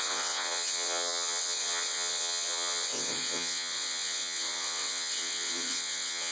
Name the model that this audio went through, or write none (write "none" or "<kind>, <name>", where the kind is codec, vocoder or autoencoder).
vocoder, WaveNeXt